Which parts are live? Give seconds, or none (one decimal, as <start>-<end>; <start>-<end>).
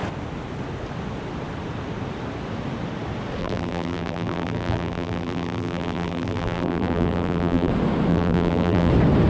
0.0-3.4; 7.7-8.1; 8.9-9.3